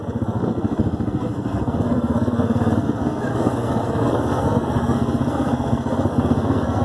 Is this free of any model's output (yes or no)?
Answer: no